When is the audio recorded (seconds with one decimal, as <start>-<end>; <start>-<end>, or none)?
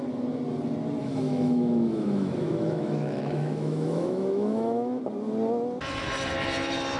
0.0-1.0; 5.0-7.0